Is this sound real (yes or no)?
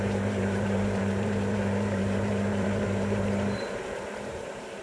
no